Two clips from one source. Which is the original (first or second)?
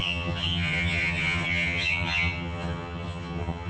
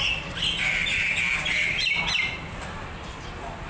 second